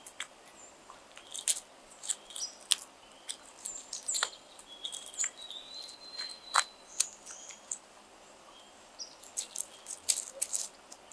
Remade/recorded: recorded